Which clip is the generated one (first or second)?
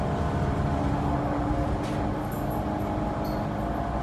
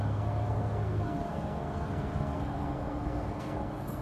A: second